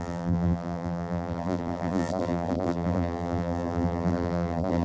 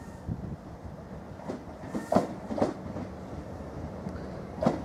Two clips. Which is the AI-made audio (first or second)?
first